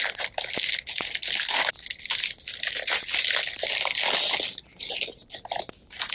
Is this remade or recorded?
recorded